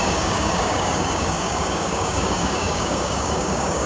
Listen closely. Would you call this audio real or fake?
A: fake